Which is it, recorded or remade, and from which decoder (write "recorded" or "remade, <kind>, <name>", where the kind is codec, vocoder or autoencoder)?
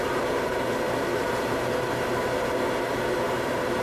remade, vocoder, BigVGAN v2